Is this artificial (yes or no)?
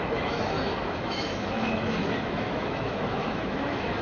yes